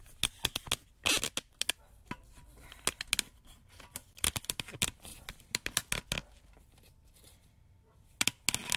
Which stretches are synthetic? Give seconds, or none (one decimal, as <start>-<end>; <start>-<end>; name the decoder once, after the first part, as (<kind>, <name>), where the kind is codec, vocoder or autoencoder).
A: none